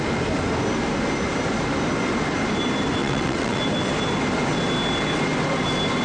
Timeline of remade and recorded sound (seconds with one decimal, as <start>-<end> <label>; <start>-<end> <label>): 0.0-3.0 recorded; 3.0-3.6 remade; 3.6-6.0 recorded